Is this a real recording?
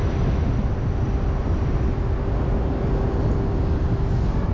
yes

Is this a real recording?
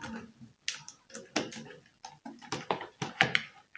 yes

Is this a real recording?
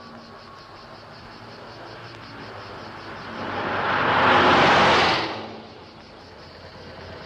yes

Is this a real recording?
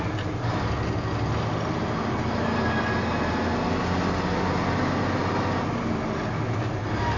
yes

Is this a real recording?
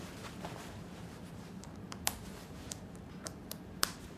no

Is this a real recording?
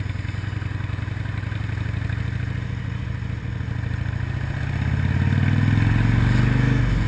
yes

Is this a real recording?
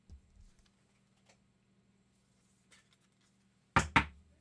yes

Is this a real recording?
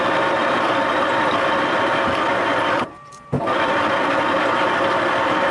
no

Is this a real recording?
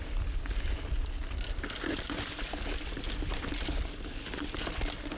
yes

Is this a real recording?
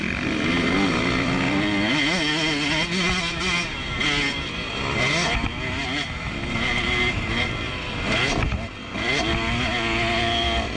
yes